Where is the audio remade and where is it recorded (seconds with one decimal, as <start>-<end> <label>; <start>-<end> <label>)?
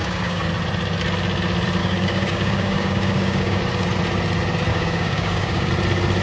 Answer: 0.0-0.5 remade; 0.5-1.8 recorded; 1.8-3.6 remade; 3.6-4.7 recorded; 4.7-5.7 remade; 5.7-6.2 recorded